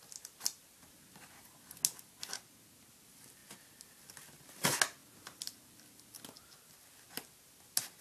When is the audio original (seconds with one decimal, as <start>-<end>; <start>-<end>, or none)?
0.0-8.0